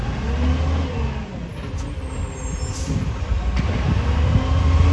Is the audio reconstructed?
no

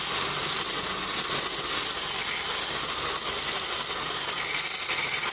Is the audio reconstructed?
no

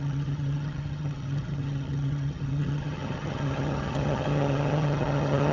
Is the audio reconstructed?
yes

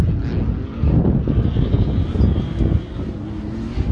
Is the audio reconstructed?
no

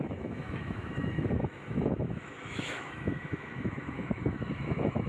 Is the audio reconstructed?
yes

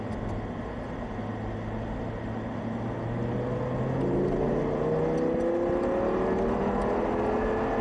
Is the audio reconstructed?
no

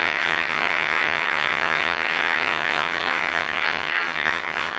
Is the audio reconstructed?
yes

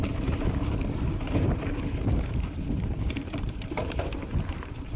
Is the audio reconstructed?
yes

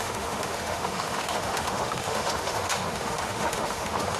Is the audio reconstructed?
yes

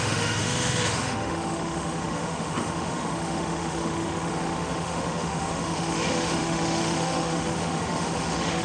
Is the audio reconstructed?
yes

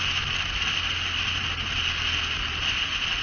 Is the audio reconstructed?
no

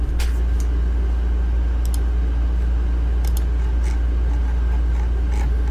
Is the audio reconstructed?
no